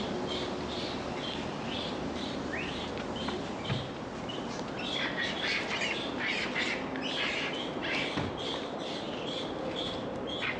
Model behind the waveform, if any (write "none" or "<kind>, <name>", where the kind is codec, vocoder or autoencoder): none